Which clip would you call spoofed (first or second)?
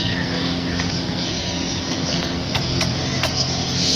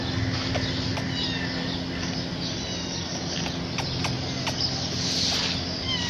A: first